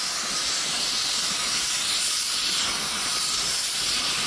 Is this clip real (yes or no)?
yes